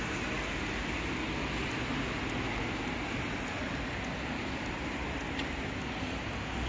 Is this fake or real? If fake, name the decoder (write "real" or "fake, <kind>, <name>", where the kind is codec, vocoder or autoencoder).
real